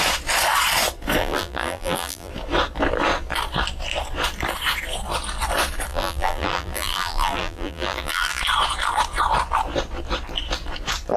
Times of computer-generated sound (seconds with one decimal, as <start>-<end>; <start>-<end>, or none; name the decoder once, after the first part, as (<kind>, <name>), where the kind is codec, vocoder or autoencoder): 1.2-2.3 (vocoder, BigVGAN v2); 5.9-8.4